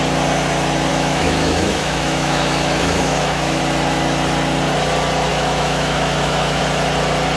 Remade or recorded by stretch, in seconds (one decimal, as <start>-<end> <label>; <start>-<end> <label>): 0.0-0.9 recorded; 0.9-3.6 remade; 3.6-5.3 recorded; 5.3-6.6 remade; 6.6-7.4 recorded